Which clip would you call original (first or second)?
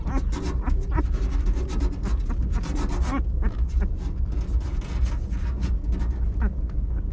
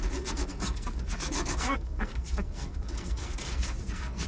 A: first